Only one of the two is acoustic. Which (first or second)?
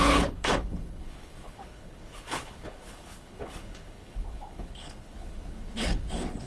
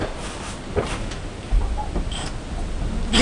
second